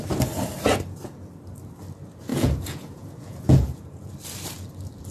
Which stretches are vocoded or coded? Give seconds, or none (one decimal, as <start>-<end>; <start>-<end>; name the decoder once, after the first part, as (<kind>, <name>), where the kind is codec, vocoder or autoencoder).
2.3-4.1 (vocoder, Vocos)